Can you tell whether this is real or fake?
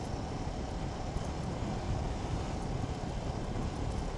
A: real